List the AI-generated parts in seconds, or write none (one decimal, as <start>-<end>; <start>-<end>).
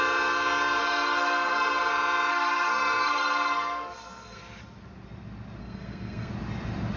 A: 0.8-1.9; 2.3-4.4; 5.6-6.3